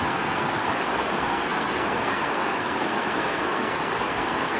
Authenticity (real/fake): fake